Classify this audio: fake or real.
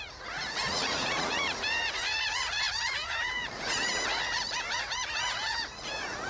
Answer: fake